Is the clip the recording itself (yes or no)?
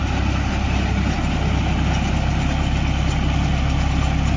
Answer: yes